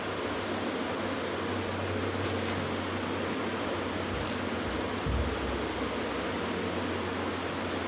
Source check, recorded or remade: recorded